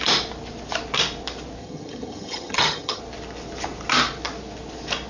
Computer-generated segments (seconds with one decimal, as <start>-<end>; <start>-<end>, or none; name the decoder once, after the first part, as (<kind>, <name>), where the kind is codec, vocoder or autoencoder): 1.6-3.0 (vocoder, HiFi-GAN)